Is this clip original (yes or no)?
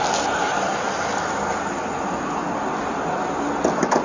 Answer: yes